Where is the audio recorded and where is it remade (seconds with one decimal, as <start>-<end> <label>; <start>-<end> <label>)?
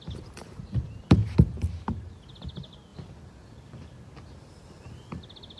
0.0-1.2 remade; 1.2-2.1 recorded; 2.1-2.9 remade; 2.9-5.6 recorded